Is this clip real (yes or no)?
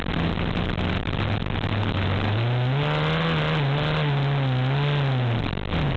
yes